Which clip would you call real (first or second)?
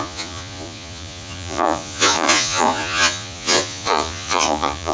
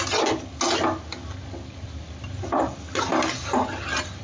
second